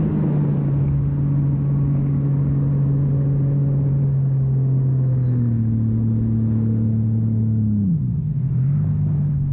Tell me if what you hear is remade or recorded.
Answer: recorded